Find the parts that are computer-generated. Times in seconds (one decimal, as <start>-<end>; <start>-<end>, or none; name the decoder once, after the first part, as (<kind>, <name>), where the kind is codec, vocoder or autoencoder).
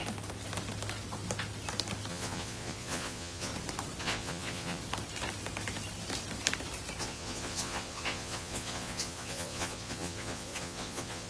2.1-3.5 (vocoder, Vocos); 4.0-4.8; 7.0-11.3